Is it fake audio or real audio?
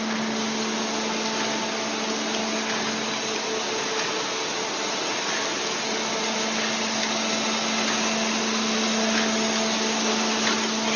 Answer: real